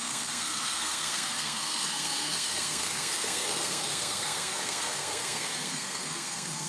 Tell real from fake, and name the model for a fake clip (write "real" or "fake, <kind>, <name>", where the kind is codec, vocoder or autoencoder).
fake, codec, SNAC